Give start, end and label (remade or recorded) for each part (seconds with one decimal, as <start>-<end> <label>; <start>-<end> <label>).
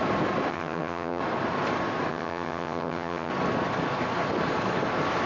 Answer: 0.0-0.5 recorded; 0.5-1.2 remade; 1.2-2.1 recorded; 2.1-3.3 remade; 3.3-5.3 recorded